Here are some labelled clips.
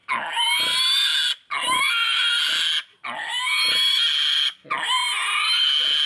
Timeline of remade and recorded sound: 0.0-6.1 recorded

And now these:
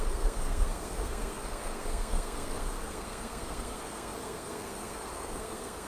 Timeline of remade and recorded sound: 0.0-5.9 remade

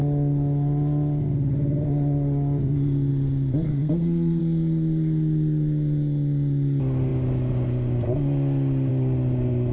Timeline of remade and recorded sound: 0.0-3.7 recorded; 3.7-4.4 remade; 4.4-9.7 recorded

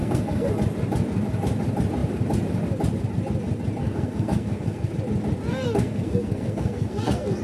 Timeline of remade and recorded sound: 0.0-0.5 remade; 0.5-3.8 recorded; 3.8-4.9 remade; 4.9-5.5 recorded; 5.5-7.4 remade

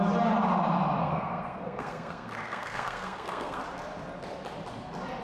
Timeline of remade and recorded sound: 0.0-1.0 recorded; 1.0-3.6 remade; 3.6-5.2 recorded